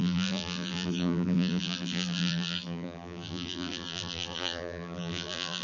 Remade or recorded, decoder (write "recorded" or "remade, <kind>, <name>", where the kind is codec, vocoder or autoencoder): remade, vocoder, BigVGAN v2